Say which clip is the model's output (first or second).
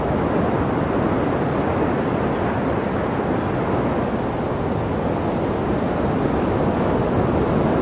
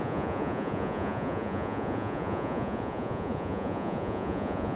second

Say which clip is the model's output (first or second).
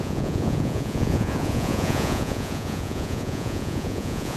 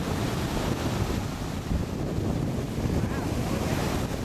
first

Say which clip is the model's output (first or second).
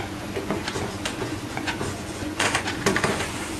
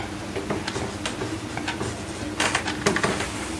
first